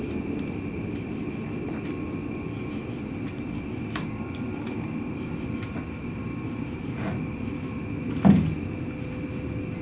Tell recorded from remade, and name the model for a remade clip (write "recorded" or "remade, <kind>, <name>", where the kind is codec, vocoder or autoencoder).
recorded